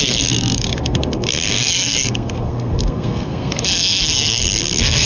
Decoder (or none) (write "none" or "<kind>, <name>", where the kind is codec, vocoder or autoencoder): codec, SNAC